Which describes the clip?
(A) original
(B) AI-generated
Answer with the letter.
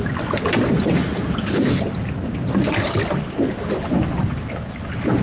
A